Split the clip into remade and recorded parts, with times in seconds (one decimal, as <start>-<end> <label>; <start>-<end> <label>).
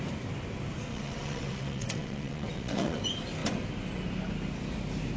0.0-0.9 recorded; 0.9-3.0 remade; 3.0-5.2 recorded